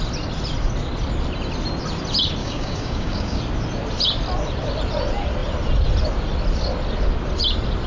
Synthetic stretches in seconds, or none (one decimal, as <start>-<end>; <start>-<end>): 2.4-3.4

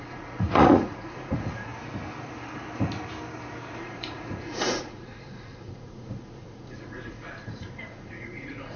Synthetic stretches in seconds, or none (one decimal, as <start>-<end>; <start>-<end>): 0.0-1.7; 3.8-8.8

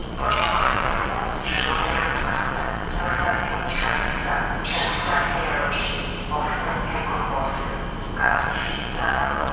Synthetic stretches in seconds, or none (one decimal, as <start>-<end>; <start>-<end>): 0.0-4.2; 8.2-9.5

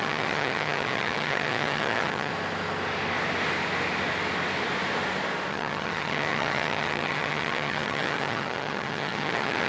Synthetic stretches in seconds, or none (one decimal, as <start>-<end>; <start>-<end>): 0.0-2.3; 5.5-9.7

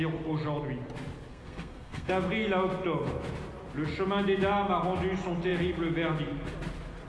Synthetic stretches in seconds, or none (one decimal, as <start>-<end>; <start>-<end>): 1.3-2.1

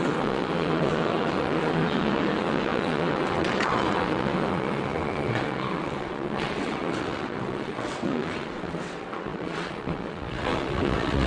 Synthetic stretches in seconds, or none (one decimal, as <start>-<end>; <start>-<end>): 0.0-11.3

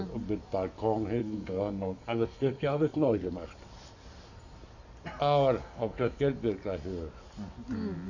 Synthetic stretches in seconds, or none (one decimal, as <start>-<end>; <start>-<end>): 1.2-3.3; 5.6-6.2